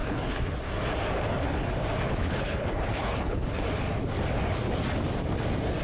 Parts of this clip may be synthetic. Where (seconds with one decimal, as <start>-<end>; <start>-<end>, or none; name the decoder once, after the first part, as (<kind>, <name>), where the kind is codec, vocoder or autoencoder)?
0.0-0.5 (codec, HILCodec); 2.2-3.6